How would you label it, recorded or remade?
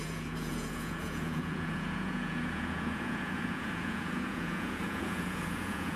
remade